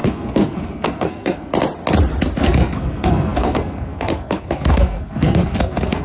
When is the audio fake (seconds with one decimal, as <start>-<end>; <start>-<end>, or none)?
0.0-1.5; 2.4-6.0